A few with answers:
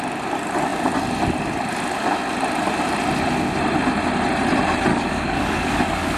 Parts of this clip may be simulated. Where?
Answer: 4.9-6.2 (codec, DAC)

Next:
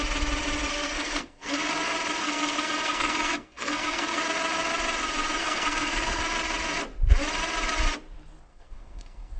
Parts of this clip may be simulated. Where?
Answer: 0.7-1.7 (codec, SNAC); 2.2-4.2; 5.4-6.2; 8.5-9.4

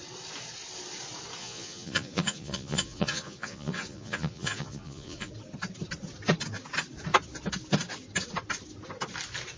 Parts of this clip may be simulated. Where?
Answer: 1.4-5.3 (vocoder, Vocos)

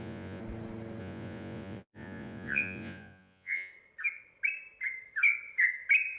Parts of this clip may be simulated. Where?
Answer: 0.0-0.4 (vocoder, Vocos); 1.0-3.7

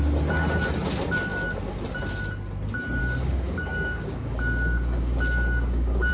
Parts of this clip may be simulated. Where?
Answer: 3.0-6.1 (codec, DAC)

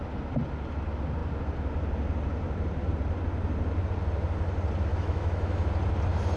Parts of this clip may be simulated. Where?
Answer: 4.9-5.7 (autoencoder, DAC-VAE)

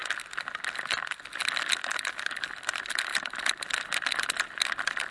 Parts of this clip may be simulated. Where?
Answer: 1.9-3.1 (vocoder, BigVGAN v2); 3.7-5.1